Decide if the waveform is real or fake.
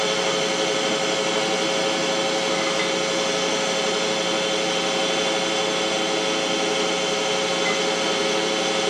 real